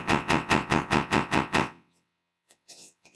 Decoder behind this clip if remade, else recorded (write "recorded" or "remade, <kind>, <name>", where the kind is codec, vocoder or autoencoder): remade, vocoder, WaveNeXt